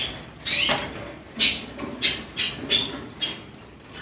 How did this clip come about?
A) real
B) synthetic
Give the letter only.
A